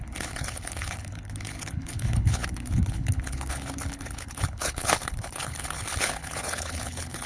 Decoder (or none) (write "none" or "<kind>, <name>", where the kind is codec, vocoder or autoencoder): codec, HILCodec